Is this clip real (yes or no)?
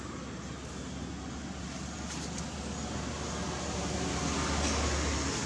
yes